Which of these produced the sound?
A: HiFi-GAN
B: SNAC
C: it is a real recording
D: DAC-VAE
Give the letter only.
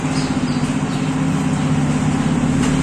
C